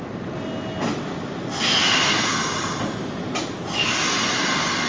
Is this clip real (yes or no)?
yes